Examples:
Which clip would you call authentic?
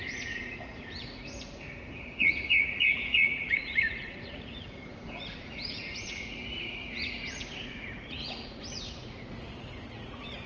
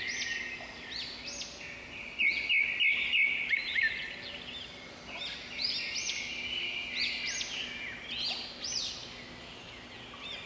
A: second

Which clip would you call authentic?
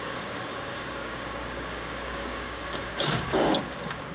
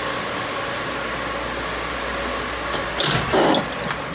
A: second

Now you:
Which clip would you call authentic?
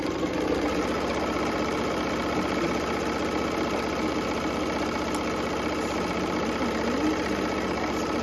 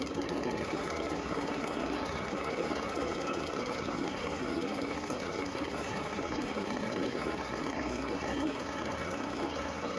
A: first